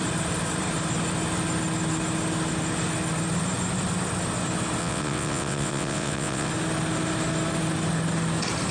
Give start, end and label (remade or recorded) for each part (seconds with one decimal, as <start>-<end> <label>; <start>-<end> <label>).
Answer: 0.0-4.8 recorded; 4.8-6.5 remade; 6.5-8.7 recorded